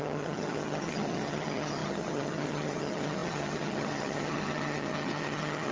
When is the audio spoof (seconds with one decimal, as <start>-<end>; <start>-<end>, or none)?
0.0-5.7